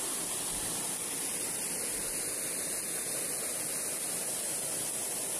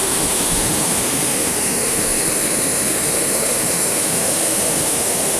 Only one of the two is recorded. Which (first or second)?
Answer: first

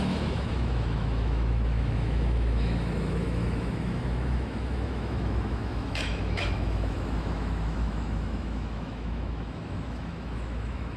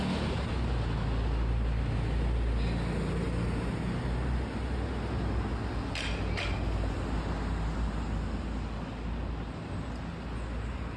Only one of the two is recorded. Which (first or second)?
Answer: second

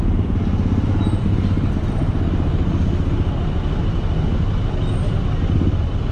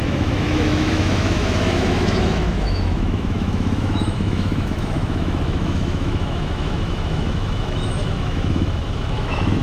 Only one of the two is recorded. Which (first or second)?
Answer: first